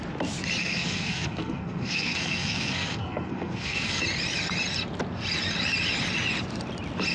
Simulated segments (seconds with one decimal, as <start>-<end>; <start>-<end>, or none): 0.6-4.0